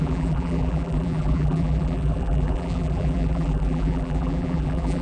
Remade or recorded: remade